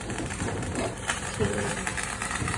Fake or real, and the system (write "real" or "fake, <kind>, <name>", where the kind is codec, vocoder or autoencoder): fake, vocoder, BigVGAN v2